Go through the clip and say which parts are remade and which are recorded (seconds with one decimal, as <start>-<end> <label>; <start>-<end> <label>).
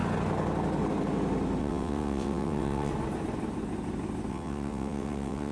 0.0-1.6 recorded; 1.6-2.9 remade; 2.9-4.3 recorded; 4.3-5.5 remade